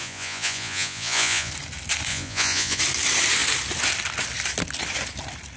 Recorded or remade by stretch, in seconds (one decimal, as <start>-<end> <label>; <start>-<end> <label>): 0.0-1.5 remade; 1.5-2.1 recorded; 2.1-2.8 remade; 2.8-5.6 recorded